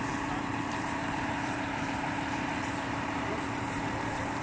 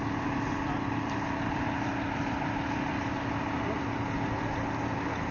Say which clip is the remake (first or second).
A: first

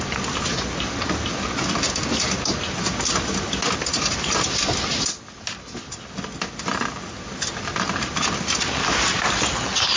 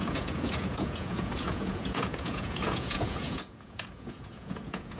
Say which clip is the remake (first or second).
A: second